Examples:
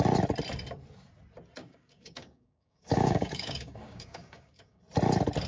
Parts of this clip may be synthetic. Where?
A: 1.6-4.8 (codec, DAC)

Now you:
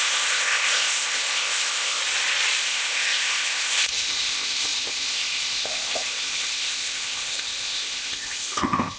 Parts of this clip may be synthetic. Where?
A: 0.0-2.0 (codec, ZipCodec); 2.6-9.0